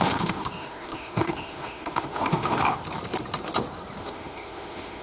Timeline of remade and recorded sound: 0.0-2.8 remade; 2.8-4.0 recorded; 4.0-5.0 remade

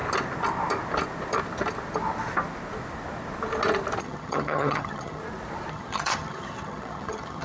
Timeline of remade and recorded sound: 0.0-4.0 recorded; 4.0-5.2 remade; 5.2-5.7 recorded; 5.7-7.4 remade

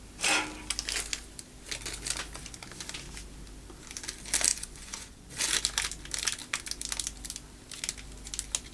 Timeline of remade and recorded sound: 0.0-4.5 recorded; 4.5-5.3 remade; 5.3-8.7 recorded

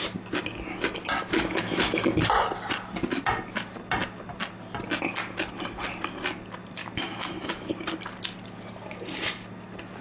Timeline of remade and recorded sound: 0.0-1.3 recorded; 1.3-2.3 remade; 2.3-6.8 recorded; 6.8-7.7 remade; 7.7-10.0 recorded

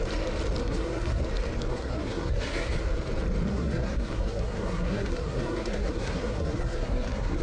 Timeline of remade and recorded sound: 0.0-0.6 recorded; 0.6-1.2 remade; 1.2-1.7 recorded; 1.7-2.7 remade; 2.7-3.5 recorded; 3.5-7.4 remade